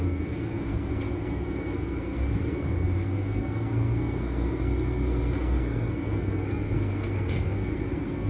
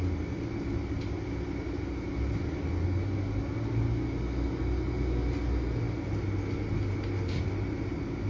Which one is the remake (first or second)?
first